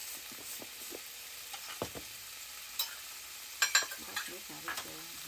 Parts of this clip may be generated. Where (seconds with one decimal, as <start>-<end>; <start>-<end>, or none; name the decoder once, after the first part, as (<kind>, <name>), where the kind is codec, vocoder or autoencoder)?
none